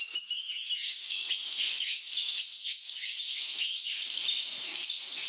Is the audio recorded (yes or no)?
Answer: no